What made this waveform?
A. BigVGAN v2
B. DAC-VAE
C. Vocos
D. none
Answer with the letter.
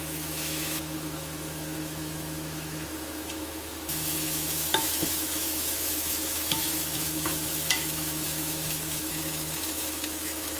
B